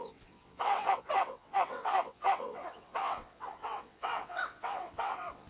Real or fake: fake